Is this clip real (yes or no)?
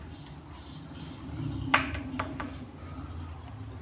yes